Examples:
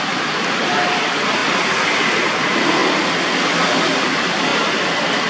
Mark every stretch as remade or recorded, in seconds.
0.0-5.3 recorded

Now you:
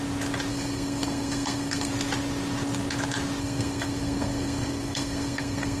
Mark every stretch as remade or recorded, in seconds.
0.0-0.5 recorded; 0.5-1.9 remade; 1.9-3.4 recorded; 3.4-5.8 remade

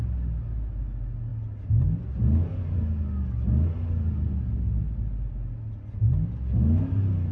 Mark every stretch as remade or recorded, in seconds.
0.0-7.3 recorded

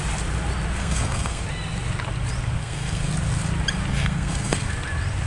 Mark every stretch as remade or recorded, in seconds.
0.0-0.8 recorded; 0.8-1.4 remade; 1.4-2.6 recorded; 2.6-3.1 remade; 3.1-3.9 recorded; 3.9-4.7 remade; 4.7-5.3 recorded

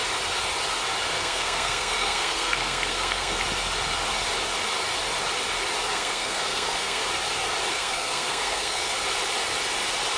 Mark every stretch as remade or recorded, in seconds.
0.0-1.1 recorded; 1.1-3.4 remade; 3.4-5.9 recorded; 5.9-7.0 remade; 7.0-7.7 recorded; 7.7-8.8 remade; 8.8-10.2 recorded

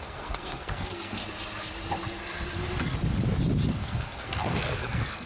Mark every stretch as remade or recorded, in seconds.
0.0-1.2 remade; 1.2-3.7 recorded; 3.7-5.3 remade